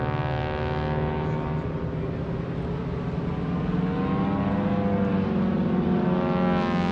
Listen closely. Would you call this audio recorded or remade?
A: recorded